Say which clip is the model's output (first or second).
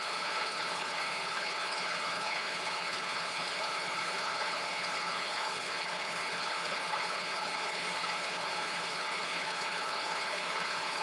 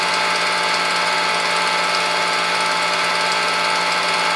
first